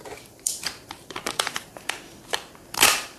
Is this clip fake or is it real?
fake